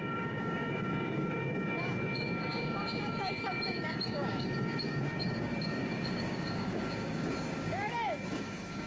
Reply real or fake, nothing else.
fake